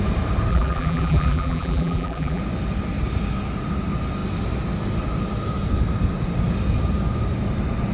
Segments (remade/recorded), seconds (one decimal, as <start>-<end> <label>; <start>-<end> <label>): 0.0-0.5 recorded; 0.5-2.4 remade; 2.4-7.9 recorded